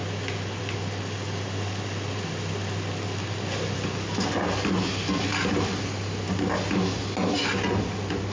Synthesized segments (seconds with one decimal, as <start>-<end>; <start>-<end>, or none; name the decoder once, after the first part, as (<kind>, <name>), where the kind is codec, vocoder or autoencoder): none